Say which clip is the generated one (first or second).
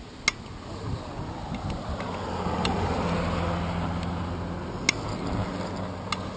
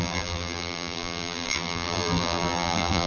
second